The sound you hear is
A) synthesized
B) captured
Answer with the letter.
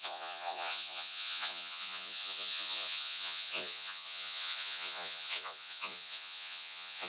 A